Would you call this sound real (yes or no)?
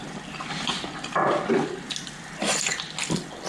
yes